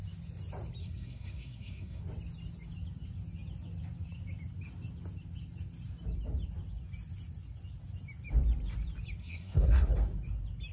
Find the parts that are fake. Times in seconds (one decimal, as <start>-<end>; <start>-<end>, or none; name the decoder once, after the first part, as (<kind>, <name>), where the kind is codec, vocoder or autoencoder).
0.8-2.0 (codec, SNAC); 9.2-9.9